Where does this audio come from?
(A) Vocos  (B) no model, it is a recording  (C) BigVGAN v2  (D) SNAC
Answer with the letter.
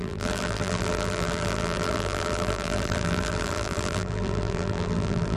C